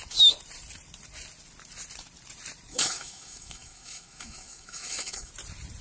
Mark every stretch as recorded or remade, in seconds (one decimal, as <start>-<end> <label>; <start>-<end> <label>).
0.0-2.7 recorded; 2.7-5.3 remade; 5.3-5.8 recorded